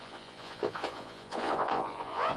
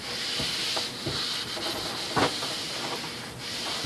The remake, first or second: first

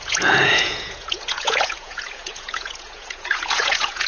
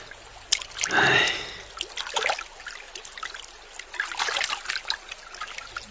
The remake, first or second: first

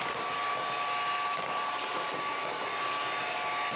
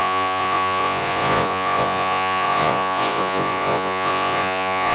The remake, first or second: second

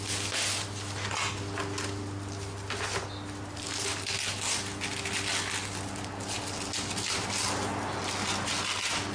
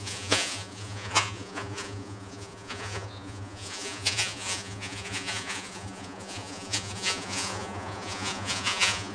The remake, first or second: second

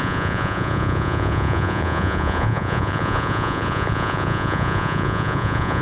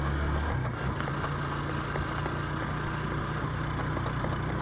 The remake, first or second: first